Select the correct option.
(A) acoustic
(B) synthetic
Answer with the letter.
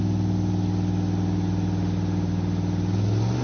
A